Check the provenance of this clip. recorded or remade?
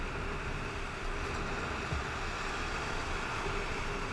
recorded